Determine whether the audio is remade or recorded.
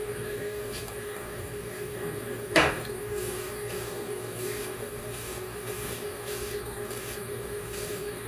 remade